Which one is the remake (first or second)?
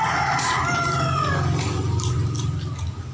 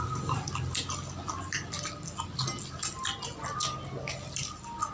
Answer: first